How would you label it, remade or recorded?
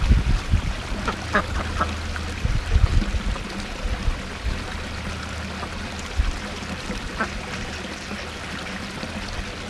recorded